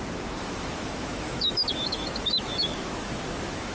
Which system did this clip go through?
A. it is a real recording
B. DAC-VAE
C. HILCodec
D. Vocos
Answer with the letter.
B